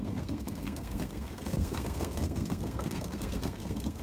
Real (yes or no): no